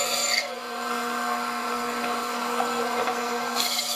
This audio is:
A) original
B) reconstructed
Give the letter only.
B